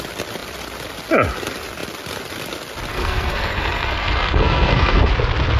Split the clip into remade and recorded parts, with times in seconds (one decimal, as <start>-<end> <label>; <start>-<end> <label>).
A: 0.0-2.9 recorded; 2.9-5.1 remade; 5.1-5.6 recorded